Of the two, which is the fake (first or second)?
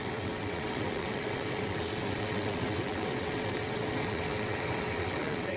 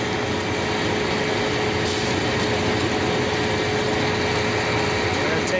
first